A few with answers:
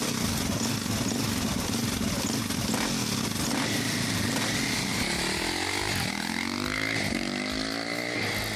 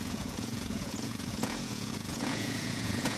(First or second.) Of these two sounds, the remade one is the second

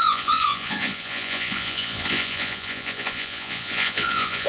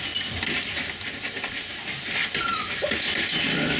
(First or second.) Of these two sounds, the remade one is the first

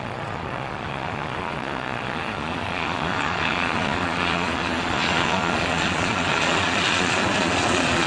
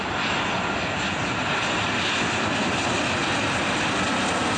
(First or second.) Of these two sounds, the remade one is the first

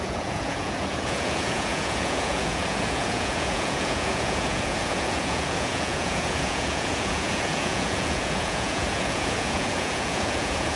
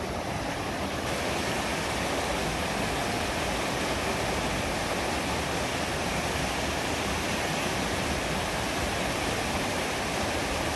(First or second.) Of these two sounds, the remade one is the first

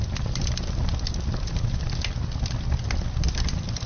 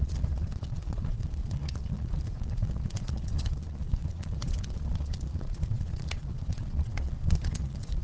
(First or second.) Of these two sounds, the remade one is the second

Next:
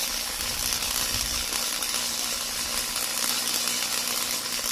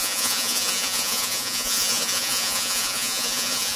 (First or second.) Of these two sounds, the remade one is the second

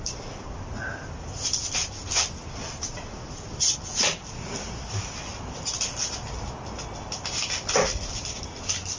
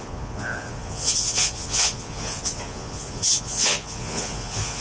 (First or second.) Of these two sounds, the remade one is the second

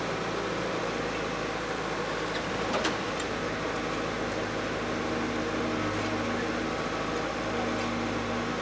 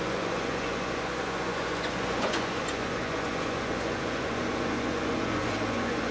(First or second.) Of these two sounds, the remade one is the second